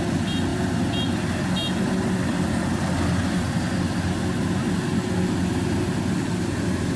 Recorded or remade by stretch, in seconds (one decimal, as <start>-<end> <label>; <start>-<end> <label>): 0.0-7.0 recorded

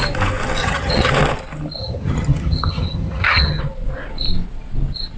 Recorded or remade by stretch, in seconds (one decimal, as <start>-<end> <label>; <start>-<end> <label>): 0.0-0.6 recorded; 0.6-1.1 remade; 1.1-1.8 recorded; 1.8-3.6 remade; 3.6-5.2 recorded